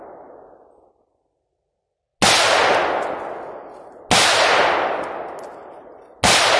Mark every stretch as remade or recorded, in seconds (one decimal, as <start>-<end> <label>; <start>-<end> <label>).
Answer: 0.0-6.6 recorded

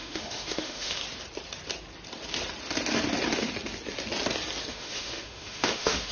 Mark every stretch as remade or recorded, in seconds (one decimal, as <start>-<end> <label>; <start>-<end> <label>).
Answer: 0.0-1.0 remade; 1.0-4.7 recorded; 4.7-6.1 remade

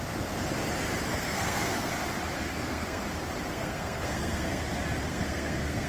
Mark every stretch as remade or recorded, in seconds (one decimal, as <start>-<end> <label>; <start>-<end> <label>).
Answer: 0.0-1.1 recorded; 1.1-1.9 remade; 1.9-2.4 recorded; 2.4-3.0 remade; 3.0-3.5 recorded; 3.5-4.6 remade; 4.6-5.1 recorded; 5.1-5.9 remade

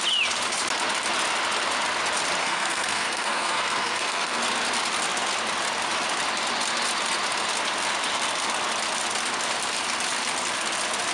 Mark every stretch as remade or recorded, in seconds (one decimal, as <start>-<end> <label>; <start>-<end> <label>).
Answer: 0.0-2.4 recorded; 2.4-4.4 remade; 4.4-11.1 recorded

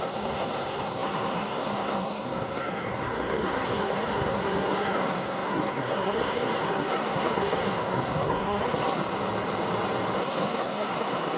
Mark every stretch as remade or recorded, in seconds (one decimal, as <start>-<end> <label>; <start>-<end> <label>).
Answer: 0.0-9.0 remade; 9.0-10.2 recorded; 10.2-11.4 remade

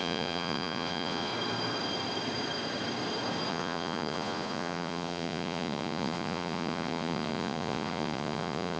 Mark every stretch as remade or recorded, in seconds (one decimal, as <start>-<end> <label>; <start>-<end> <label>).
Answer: 0.0-1.3 remade; 1.3-3.5 recorded; 3.5-8.8 remade

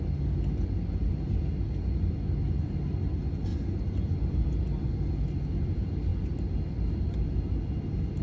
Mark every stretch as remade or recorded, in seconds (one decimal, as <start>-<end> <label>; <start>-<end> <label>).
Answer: 0.0-8.2 recorded

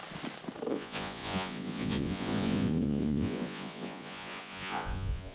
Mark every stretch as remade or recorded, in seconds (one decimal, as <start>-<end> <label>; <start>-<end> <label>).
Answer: 0.0-0.7 recorded; 0.7-5.3 remade